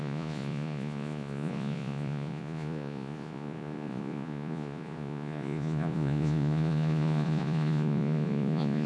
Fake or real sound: fake